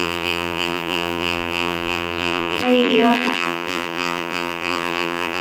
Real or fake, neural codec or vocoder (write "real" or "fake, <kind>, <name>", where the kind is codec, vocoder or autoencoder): fake, vocoder, BigVGAN v2